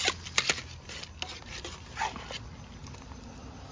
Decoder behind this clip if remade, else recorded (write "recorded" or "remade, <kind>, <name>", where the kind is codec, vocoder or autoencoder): recorded